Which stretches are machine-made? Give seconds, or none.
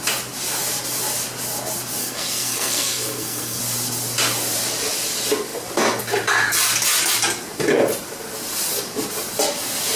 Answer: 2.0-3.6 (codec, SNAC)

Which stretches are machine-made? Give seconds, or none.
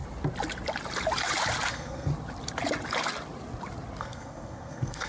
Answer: 1.7-2.1 (codec, SNAC); 4.0-5.1